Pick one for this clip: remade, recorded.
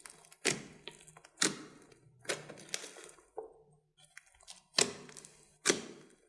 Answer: recorded